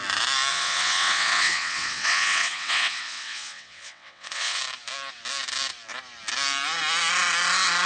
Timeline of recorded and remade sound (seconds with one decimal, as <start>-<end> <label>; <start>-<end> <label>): 0.0-0.5 recorded; 0.5-4.6 remade; 4.6-7.9 recorded